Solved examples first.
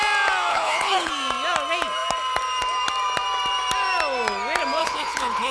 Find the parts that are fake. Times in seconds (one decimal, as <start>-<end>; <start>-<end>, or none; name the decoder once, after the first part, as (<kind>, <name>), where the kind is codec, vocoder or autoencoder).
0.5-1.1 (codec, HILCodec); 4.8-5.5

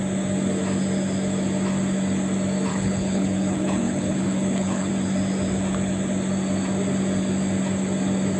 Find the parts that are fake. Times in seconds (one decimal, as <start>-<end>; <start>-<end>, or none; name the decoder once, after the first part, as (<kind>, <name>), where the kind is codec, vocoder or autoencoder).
2.7-4.9 (codec, HILCodec)

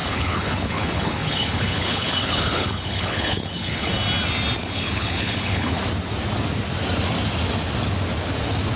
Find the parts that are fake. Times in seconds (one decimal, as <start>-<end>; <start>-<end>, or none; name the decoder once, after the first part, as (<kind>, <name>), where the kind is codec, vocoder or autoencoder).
0.0-3.9 (codec, HILCodec); 4.6-5.8

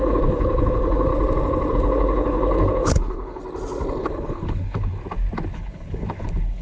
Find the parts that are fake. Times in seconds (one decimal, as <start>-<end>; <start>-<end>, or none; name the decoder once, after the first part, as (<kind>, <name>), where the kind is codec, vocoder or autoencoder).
0.0-1.1 (codec, HILCodec); 1.7-3.4; 4.0-5.0; 5.5-6.6